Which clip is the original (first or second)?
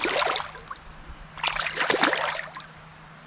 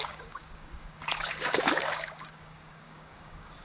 first